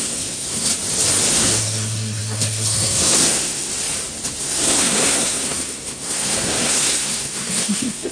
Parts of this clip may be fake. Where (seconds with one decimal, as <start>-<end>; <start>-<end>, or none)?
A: 0.0-0.7; 1.3-3.7; 4.4-8.1

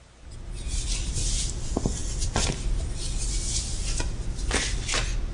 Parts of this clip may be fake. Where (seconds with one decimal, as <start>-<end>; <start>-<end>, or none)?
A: none

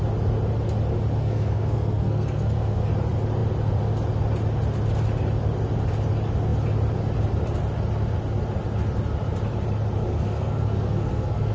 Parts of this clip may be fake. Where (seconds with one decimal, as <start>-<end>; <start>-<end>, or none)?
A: 1.2-2.9; 10.1-11.5